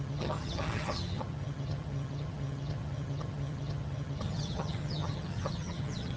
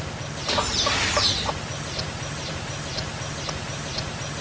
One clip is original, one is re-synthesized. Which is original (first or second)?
second